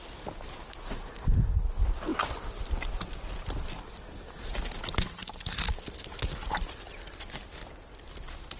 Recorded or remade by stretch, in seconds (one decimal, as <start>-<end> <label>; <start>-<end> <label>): 0.0-8.6 recorded